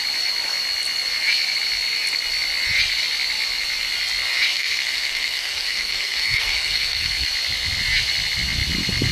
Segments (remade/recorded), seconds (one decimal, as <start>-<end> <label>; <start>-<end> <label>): 0.0-4.5 recorded; 4.5-7.3 remade; 7.3-9.1 recorded